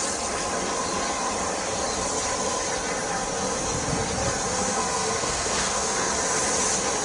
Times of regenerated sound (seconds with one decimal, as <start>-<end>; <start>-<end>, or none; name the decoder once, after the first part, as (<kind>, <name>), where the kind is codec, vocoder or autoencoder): 4.5-6.1 (codec, SNAC)